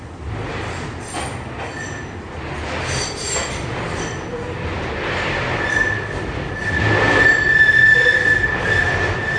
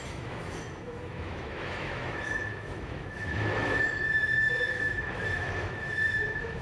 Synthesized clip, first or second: second